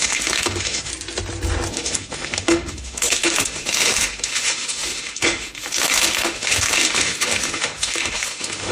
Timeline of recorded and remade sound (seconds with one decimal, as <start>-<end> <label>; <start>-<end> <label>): 0.0-0.9 remade; 0.9-1.7 recorded; 1.7-8.7 remade